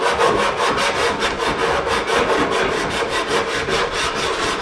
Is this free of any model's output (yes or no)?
yes